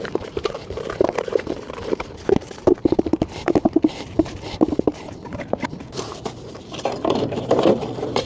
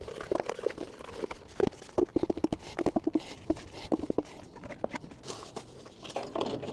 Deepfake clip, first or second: first